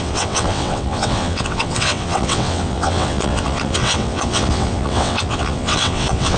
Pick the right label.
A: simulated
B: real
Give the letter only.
A